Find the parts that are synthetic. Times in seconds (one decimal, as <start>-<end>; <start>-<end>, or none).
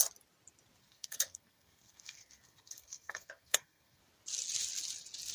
0.8-4.0